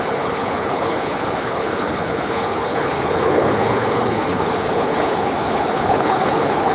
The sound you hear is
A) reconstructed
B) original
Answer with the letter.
A